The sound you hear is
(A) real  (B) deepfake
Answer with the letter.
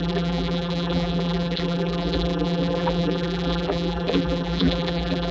B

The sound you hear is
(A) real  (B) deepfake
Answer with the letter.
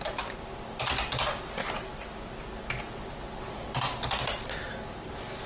A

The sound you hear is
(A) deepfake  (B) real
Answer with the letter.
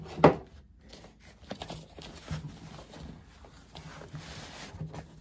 B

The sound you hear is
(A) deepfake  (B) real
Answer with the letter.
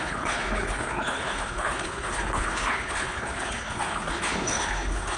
A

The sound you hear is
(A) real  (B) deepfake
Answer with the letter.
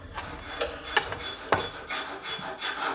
A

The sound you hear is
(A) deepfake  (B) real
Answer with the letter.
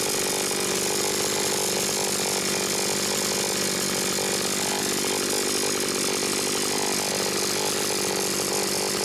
B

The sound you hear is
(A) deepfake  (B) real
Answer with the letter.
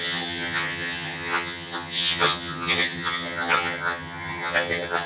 A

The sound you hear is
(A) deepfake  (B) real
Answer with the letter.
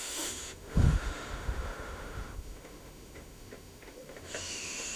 A